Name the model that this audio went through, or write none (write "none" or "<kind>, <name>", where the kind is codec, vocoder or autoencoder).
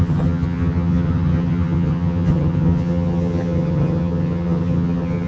vocoder, HiFi-GAN